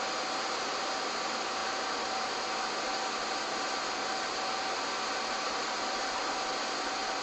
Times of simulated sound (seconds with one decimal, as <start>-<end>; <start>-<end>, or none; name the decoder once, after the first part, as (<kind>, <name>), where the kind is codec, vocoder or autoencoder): none